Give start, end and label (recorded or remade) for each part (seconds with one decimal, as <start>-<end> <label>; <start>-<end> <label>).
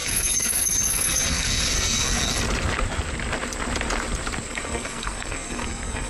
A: 0.0-2.4 remade; 2.4-4.5 recorded; 4.5-6.1 remade